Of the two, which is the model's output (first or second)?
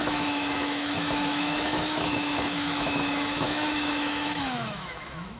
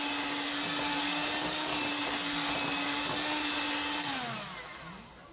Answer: first